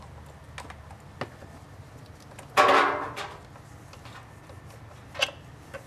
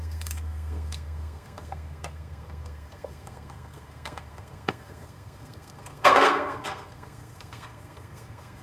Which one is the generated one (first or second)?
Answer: second